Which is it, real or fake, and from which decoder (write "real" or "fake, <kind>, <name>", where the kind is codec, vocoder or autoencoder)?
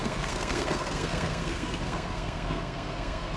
fake, codec, SNAC